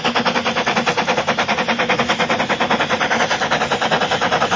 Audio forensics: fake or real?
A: real